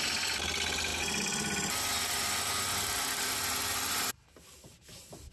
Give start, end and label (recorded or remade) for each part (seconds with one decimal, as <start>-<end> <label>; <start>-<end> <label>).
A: 0.0-5.3 recorded